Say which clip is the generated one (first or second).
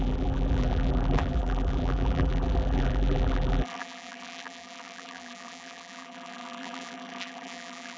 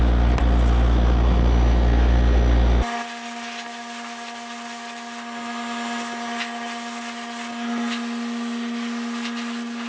first